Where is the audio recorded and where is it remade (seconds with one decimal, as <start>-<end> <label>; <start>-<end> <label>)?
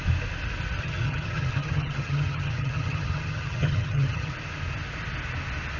0.0-0.8 recorded; 0.8-4.3 remade; 4.3-5.8 recorded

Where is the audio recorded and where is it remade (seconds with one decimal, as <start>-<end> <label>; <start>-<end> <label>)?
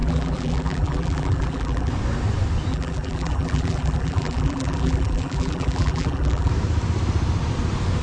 0.0-1.9 remade; 1.9-2.7 recorded; 2.7-6.5 remade; 6.5-8.0 recorded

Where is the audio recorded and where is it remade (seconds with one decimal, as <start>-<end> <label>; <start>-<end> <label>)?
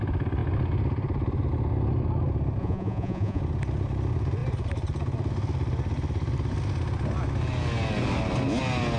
0.0-2.6 recorded; 2.6-3.4 remade; 3.4-9.0 recorded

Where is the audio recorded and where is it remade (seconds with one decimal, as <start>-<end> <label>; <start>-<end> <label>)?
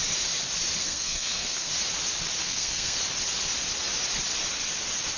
0.0-0.8 recorded; 0.8-1.7 remade; 1.7-2.4 recorded; 2.4-3.0 remade; 3.0-5.2 recorded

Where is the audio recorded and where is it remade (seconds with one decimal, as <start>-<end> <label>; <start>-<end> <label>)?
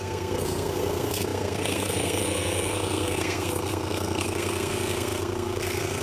0.0-6.0 remade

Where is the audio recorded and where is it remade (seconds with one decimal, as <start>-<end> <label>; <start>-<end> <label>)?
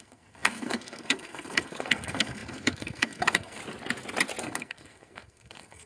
0.0-3.6 remade; 3.6-4.4 recorded; 4.4-5.9 remade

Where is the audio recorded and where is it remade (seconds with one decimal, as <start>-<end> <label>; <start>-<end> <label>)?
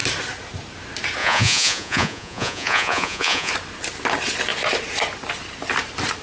0.0-1.2 recorded; 1.2-3.5 remade; 3.5-6.2 recorded